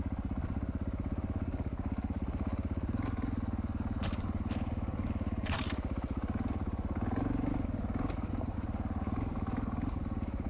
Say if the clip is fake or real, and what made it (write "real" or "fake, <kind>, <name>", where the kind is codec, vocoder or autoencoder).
real